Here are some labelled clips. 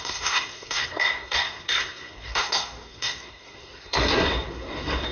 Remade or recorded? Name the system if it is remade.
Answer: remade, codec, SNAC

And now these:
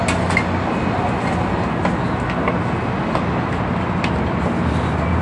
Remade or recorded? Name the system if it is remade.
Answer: recorded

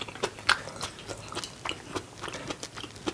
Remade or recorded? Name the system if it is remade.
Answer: recorded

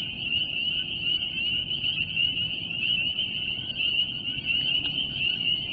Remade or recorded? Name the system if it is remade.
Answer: recorded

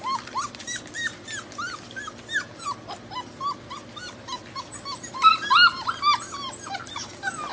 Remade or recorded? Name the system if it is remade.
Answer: recorded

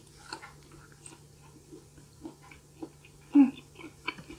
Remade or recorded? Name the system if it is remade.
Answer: recorded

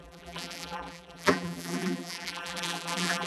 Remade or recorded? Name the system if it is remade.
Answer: remade, vocoder, BigVGAN v2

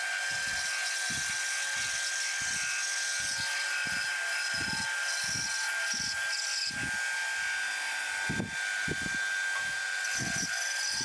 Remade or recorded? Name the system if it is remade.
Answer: recorded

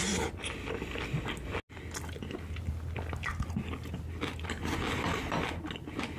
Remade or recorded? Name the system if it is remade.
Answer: recorded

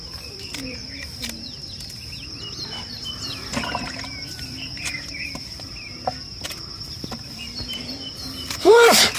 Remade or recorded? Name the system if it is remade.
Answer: remade, vocoder, BigVGAN v2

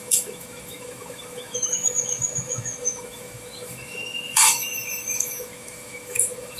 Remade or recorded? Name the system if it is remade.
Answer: remade, autoencoder, DAC-VAE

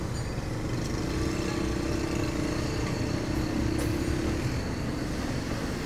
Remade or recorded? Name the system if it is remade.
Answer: recorded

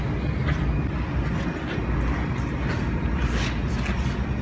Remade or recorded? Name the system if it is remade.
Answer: recorded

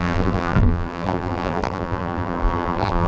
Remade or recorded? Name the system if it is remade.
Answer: remade, vocoder, BigVGAN v2